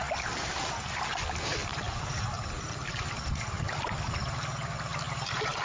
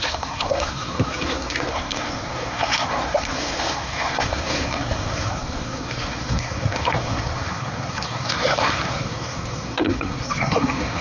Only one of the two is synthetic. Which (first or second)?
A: second